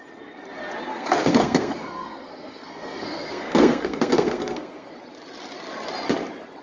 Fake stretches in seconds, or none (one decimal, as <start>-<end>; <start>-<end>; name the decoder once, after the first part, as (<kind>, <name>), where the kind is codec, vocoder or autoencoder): 0.9-4.9 (codec, SNAC)